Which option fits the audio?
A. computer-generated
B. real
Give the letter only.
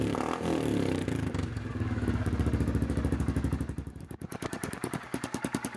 A